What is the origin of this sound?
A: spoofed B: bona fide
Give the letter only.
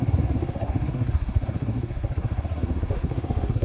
A